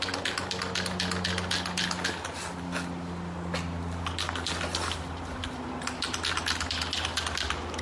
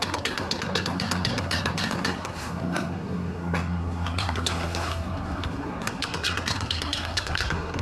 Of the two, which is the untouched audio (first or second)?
first